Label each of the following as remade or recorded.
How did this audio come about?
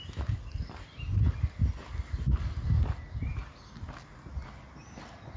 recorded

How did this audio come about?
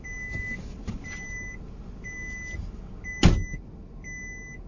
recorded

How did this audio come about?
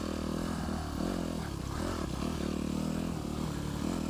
recorded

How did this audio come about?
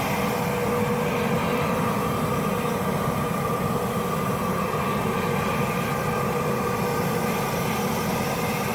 recorded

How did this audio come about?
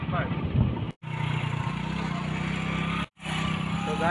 recorded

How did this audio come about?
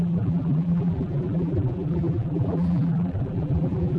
remade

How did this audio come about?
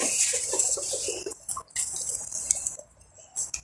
recorded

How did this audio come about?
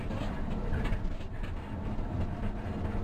recorded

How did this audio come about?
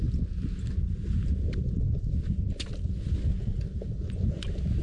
recorded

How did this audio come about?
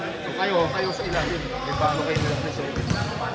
recorded